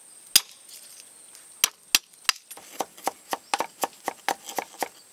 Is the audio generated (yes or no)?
no